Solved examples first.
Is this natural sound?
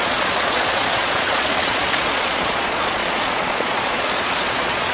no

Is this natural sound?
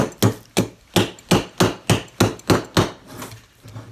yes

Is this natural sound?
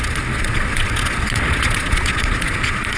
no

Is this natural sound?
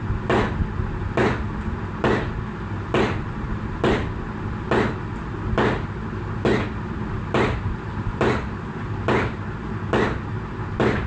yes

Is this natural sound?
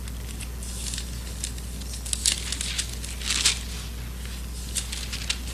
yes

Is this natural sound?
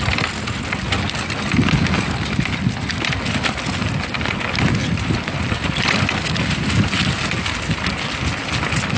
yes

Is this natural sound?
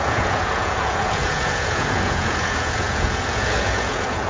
no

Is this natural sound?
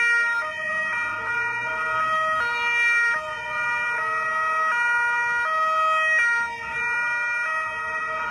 yes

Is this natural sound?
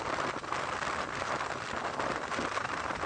yes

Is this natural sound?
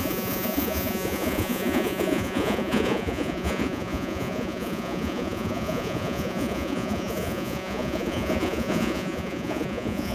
no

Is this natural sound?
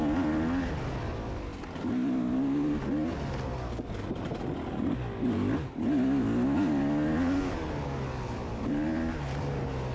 yes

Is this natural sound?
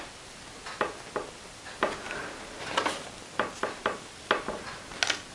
yes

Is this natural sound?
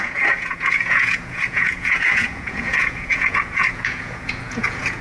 no